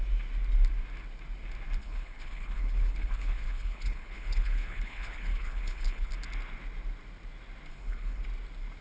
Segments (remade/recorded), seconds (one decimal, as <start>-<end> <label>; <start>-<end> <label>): 0.0-1.8 recorded; 1.8-6.1 remade; 6.1-7.7 recorded; 7.7-8.2 remade; 8.2-8.8 recorded